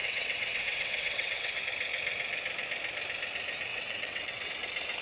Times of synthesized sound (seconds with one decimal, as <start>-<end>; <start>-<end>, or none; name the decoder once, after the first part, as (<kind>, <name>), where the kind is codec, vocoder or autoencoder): 0.0-1.6 (vocoder, WaveNeXt); 3.7-4.5